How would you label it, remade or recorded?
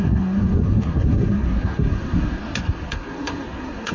remade